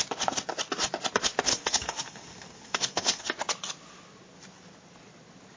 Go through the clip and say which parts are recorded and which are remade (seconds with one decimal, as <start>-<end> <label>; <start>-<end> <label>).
0.0-1.5 recorded; 1.5-3.3 remade; 3.3-5.6 recorded